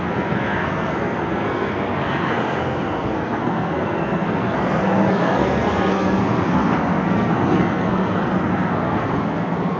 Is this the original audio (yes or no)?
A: no